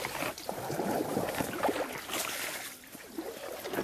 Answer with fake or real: real